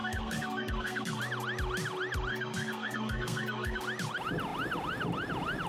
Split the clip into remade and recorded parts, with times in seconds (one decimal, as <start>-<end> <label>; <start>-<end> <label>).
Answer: 0.0-1.2 remade; 1.2-2.3 recorded; 2.3-3.8 remade; 3.8-5.7 recorded